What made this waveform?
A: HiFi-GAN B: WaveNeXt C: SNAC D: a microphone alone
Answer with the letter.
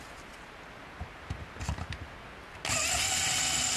D